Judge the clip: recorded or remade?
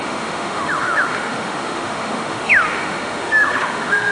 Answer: remade